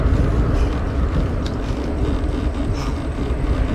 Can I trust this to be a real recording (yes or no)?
yes